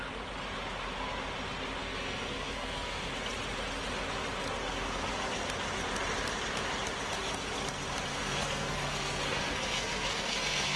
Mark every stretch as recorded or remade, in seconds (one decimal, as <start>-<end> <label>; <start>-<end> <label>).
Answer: 0.0-1.8 recorded; 1.8-3.1 remade; 3.1-8.1 recorded; 8.1-10.8 remade